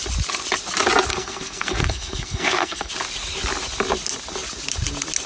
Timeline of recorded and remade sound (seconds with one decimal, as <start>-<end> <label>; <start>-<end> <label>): 0.0-1.1 recorded; 1.1-2.9 remade; 2.9-5.3 recorded